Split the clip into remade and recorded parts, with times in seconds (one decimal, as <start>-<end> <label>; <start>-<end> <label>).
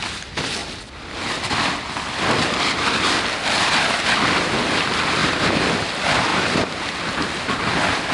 0.0-0.6 recorded; 0.6-1.5 remade; 1.5-5.2 recorded; 5.2-5.7 remade; 5.7-6.3 recorded; 6.3-7.6 remade; 7.6-8.1 recorded